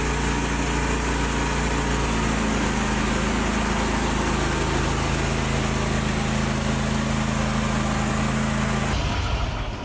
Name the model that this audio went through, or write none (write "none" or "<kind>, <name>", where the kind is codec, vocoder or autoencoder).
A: none